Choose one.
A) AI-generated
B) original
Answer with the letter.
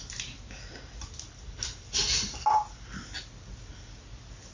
B